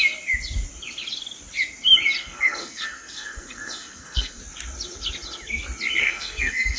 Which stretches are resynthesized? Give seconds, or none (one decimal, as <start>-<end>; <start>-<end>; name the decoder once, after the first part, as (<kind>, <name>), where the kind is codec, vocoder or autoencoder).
2.2-4.4 (codec, SNAC); 6.0-6.8